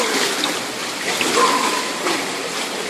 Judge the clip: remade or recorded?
recorded